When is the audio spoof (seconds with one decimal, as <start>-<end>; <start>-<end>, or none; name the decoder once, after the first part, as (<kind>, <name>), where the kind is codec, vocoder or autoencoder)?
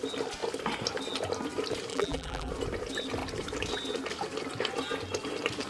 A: 1.9-2.5 (vocoder, BigVGAN v2)